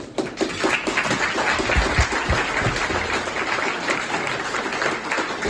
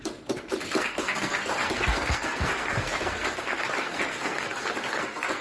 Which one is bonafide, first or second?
first